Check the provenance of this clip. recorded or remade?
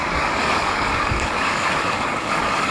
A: remade